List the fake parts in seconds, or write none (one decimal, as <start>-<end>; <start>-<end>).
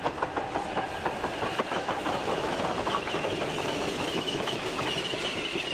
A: 1.5-4.9